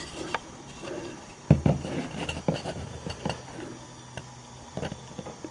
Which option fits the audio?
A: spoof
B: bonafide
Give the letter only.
B